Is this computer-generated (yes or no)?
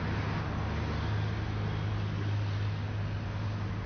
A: no